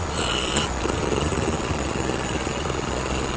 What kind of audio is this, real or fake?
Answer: fake